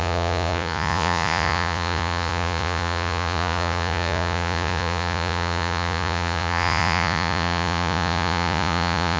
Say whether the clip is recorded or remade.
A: remade